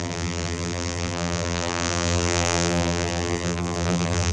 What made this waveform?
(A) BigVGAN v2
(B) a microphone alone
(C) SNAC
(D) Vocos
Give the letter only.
A